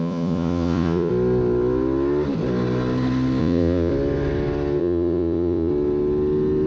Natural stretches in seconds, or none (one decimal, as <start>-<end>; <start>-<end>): 1.1-3.4; 3.9-4.8; 5.7-6.7